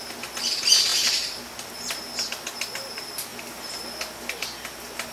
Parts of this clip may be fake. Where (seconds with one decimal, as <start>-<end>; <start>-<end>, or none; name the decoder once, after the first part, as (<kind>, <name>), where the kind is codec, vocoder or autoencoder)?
0.9-1.7 (vocoder, BigVGAN v2)